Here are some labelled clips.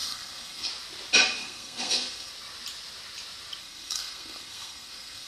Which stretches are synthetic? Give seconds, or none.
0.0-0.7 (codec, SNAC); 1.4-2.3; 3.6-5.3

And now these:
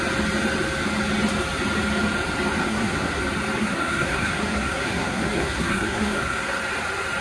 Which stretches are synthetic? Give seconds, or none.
2.6-3.2 (codec, SNAC); 3.6-6.6

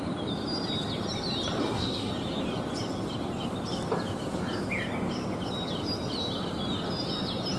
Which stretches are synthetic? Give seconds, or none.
1.6-2.1 (codec, SNAC)

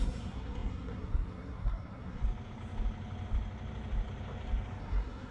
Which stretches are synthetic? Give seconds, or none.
0.0-2.2 (codec, SNAC); 4.8-5.3

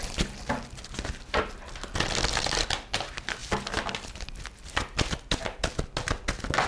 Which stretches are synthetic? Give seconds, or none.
none

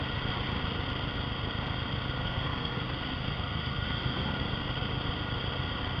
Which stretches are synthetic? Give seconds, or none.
2.2-4.3 (codec, SNAC)